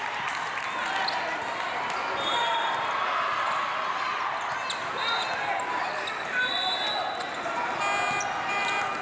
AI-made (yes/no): no